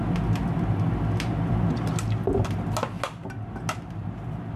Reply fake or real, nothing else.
real